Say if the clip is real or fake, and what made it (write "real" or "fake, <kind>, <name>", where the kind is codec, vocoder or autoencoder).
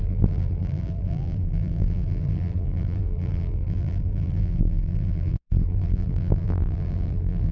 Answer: fake, vocoder, BigVGAN v2